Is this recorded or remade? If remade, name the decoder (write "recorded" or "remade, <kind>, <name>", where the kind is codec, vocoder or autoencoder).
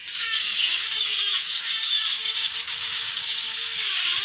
remade, codec, DAC